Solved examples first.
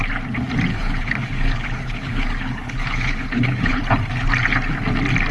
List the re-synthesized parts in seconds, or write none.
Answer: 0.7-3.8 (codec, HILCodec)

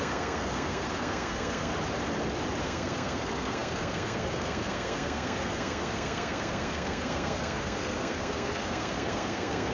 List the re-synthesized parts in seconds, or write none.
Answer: 0.0-1.7 (codec, SNAC); 2.6-9.7